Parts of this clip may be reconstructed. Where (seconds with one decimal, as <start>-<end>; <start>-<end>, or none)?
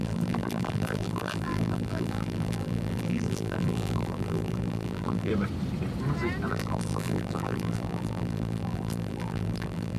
0.0-5.3; 6.5-10.0